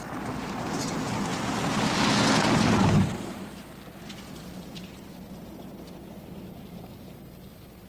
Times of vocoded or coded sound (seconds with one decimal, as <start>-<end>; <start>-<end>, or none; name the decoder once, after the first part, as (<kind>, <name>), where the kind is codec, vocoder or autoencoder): none